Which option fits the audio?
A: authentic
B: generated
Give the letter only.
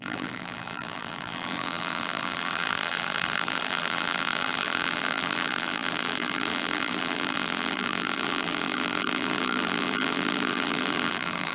B